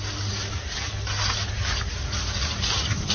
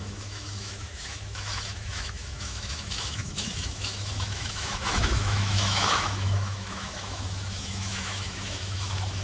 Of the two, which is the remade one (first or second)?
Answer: second